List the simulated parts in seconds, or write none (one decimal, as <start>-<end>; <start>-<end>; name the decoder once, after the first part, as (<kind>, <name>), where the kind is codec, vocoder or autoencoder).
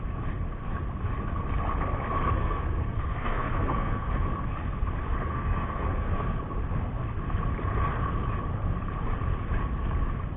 2.4-4.1 (codec, SNAC); 5.3-6.4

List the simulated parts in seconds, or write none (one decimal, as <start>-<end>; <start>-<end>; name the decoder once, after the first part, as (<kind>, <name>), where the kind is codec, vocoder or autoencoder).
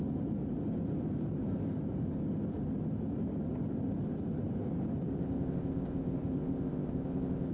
5.2-7.5 (codec, ZipCodec)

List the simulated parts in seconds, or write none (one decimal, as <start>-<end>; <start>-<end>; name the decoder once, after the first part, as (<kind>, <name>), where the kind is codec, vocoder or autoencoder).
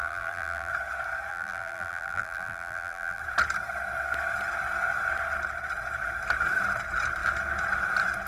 0.0-0.7 (vocoder, BigVGAN v2); 1.3-3.2